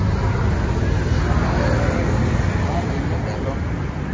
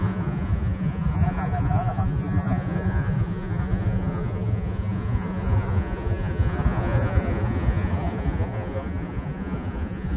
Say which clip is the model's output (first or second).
second